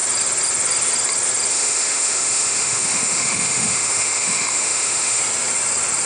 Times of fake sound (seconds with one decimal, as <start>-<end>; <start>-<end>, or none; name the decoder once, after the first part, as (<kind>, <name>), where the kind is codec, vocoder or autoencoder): 1.5-5.2 (autoencoder, DAC-VAE)